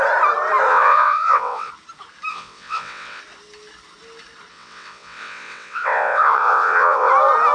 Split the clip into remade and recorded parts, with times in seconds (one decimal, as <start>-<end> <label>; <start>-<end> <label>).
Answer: 0.0-0.7 recorded; 0.7-1.7 remade; 1.7-2.3 recorded; 2.3-3.2 remade; 3.2-4.5 recorded; 4.5-7.1 remade; 7.1-7.5 recorded